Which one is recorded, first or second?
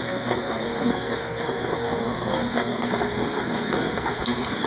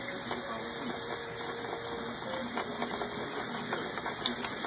second